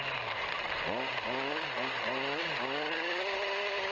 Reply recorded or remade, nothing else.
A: recorded